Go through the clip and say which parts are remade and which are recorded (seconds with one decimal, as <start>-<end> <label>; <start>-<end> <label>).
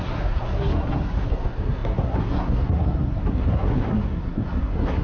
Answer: 0.0-5.0 remade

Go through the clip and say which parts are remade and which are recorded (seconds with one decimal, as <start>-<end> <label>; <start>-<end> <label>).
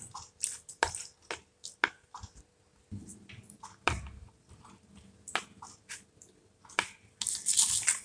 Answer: 0.0-8.0 recorded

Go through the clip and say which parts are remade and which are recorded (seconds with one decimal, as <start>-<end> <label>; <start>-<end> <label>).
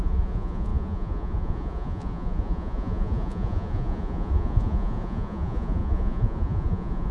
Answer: 0.0-7.1 remade